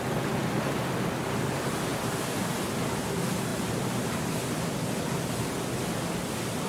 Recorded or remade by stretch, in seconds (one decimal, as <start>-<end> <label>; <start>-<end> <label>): 0.0-3.5 recorded; 3.5-4.6 remade; 4.6-6.7 recorded

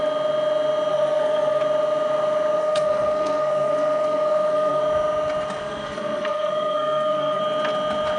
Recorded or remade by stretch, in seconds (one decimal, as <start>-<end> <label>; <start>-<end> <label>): 0.0-0.9 recorded; 0.9-1.6 remade; 1.6-2.6 recorded; 2.6-4.8 remade; 4.8-5.6 recorded; 5.6-7.4 remade; 7.4-8.2 recorded

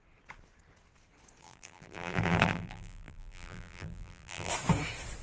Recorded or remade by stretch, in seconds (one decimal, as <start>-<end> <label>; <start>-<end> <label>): 0.0-1.4 recorded; 1.4-4.5 remade; 4.5-5.2 recorded

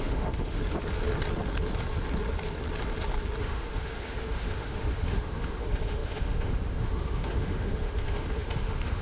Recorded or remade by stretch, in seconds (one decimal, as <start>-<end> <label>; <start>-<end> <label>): 0.0-0.6 remade; 0.6-3.4 recorded; 3.4-9.0 remade

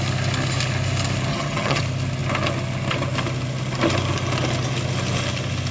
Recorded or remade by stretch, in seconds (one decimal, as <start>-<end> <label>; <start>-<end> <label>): 0.0-1.3 recorded; 1.3-1.8 remade; 1.8-5.7 recorded

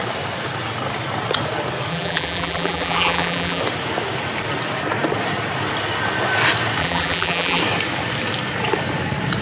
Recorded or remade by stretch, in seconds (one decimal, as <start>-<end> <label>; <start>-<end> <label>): 0.0-1.9 recorded; 1.9-3.6 remade; 3.6-6.8 recorded; 6.8-7.6 remade; 7.6-9.4 recorded

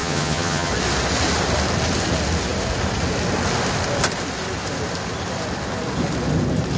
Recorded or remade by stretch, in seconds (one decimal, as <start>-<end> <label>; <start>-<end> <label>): 0.0-0.7 remade; 0.7-6.8 recorded

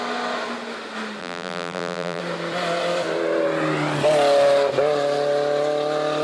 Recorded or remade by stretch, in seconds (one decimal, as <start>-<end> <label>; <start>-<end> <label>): 0.0-1.2 recorded; 1.2-2.2 remade; 2.2-6.2 recorded